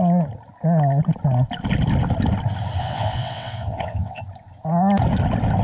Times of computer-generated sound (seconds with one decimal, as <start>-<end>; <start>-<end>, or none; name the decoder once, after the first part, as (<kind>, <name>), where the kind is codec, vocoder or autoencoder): 2.8-4.2 (vocoder, WaveNeXt)